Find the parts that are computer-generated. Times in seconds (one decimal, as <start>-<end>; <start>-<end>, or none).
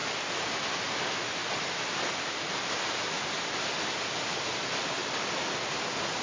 0.0-0.8; 1.4-4.5